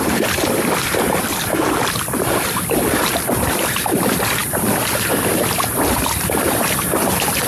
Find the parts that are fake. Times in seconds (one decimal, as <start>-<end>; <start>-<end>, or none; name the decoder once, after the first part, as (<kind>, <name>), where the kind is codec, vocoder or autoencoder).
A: 0.0-7.5 (vocoder, BigVGAN v2)